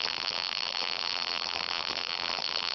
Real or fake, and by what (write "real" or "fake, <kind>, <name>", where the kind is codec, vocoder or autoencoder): fake, vocoder, BigVGAN v2